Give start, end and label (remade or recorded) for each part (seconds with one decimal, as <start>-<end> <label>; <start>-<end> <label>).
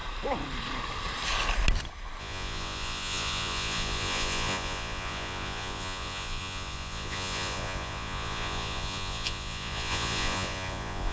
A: 0.0-2.2 recorded; 2.2-11.1 remade